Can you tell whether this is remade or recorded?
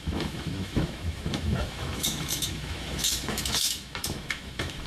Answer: remade